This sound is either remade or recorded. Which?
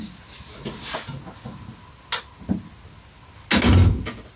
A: recorded